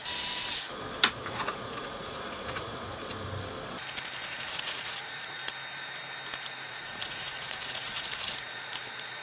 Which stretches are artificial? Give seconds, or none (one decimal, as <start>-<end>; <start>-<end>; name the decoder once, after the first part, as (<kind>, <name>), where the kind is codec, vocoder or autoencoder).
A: 1.3-3.0 (vocoder, Vocos); 4.5-5.4; 6.5-9.2